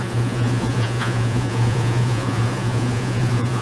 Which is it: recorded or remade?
remade